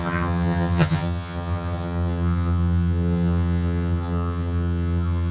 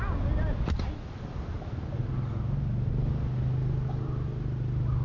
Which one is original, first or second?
second